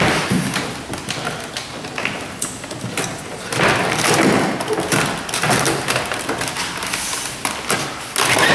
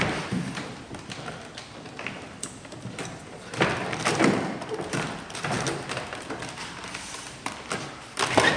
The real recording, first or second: first